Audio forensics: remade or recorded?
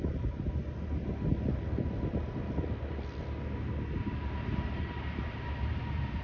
recorded